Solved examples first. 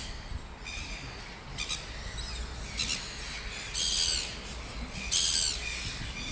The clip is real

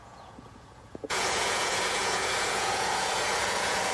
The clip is fake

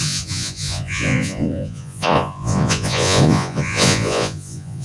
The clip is fake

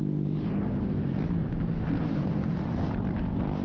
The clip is real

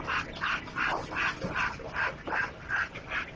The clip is real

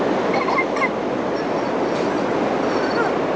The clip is real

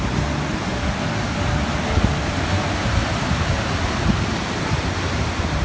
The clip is real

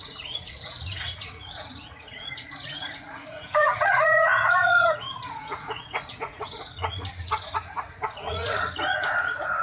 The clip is fake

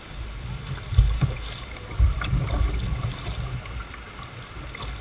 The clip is real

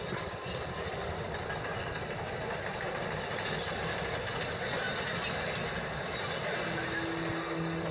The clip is real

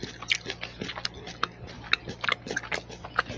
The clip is real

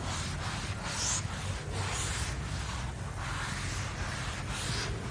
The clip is real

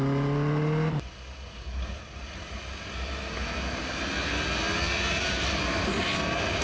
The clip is real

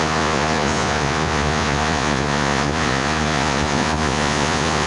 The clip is fake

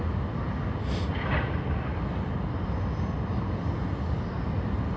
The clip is real